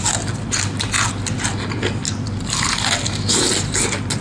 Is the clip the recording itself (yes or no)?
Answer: yes